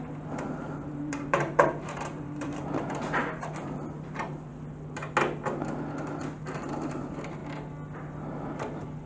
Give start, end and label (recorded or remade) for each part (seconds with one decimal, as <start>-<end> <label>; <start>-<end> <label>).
0.0-4.5 remade; 4.5-6.4 recorded; 6.4-7.4 remade; 7.4-9.1 recorded